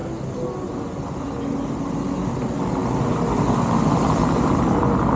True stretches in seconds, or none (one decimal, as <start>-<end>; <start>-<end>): 0.0-5.2